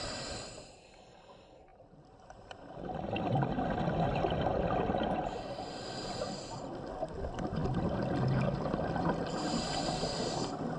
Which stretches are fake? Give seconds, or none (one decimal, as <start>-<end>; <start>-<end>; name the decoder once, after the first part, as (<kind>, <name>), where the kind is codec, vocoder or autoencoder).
1.7-6.9 (vocoder, BigVGAN v2)